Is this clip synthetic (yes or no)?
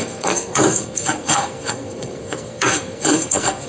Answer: yes